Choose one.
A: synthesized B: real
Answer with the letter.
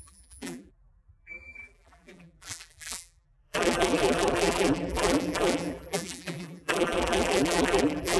A